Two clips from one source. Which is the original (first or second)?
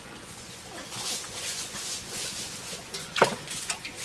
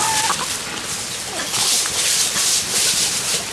second